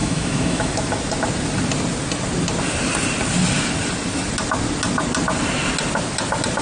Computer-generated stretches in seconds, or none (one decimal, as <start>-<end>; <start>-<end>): 0.0-0.7